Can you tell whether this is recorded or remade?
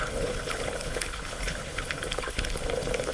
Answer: remade